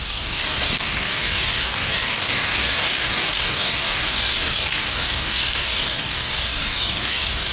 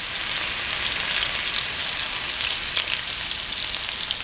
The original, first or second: second